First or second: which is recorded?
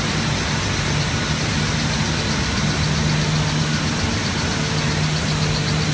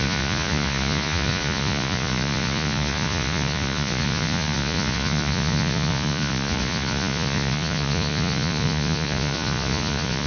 first